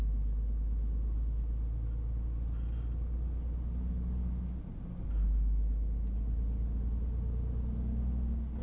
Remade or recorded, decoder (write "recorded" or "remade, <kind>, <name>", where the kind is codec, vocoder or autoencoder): recorded